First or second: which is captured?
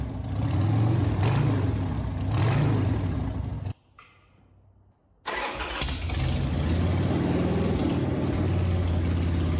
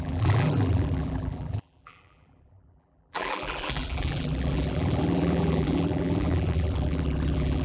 first